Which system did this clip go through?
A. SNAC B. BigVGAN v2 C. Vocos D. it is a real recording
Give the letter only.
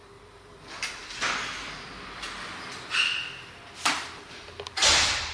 D